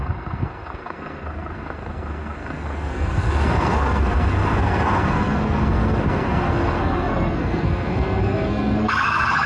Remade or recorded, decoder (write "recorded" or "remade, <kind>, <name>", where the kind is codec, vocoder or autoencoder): remade, codec, SNAC